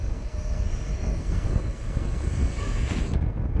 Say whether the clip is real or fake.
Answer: fake